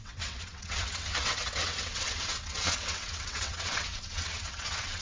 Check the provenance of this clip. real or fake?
fake